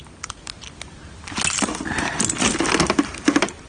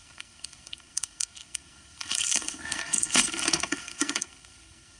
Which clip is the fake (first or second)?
second